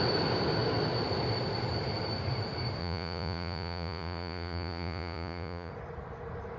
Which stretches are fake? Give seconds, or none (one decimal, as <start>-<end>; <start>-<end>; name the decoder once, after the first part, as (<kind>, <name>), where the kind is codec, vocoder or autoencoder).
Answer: 2.8-5.7 (vocoder, Vocos)